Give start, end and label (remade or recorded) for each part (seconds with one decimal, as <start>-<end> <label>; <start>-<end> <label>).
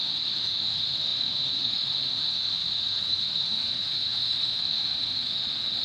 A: 0.0-5.8 remade